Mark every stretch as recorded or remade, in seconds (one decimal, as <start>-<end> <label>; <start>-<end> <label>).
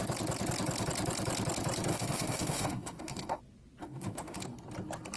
0.0-1.9 recorded; 1.9-3.4 remade; 3.4-3.8 recorded; 3.8-4.4 remade; 4.4-5.2 recorded